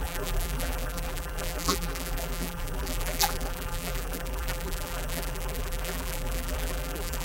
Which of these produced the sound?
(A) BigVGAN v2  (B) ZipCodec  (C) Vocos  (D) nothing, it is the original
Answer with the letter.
A